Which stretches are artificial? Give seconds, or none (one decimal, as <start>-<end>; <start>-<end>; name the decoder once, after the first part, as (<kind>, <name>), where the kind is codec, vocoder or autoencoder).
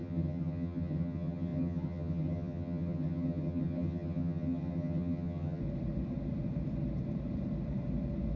0.0-5.6 (vocoder, HiFi-GAN)